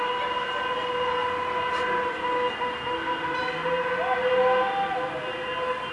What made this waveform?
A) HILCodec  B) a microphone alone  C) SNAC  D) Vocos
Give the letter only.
B